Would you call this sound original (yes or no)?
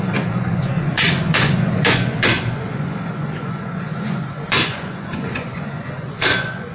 no